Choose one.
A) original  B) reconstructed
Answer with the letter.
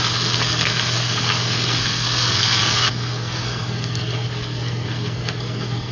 B